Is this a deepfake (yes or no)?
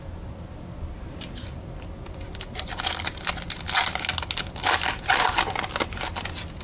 no